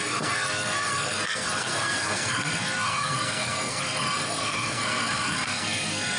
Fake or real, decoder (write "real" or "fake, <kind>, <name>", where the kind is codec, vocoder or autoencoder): fake, codec, SNAC